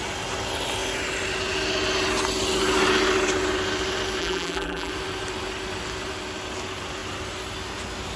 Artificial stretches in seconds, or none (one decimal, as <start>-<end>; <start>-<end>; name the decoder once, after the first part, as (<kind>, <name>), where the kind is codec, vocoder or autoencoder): 4.2-4.9 (vocoder, BigVGAN v2)